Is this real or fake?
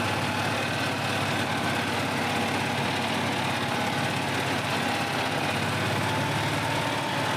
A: real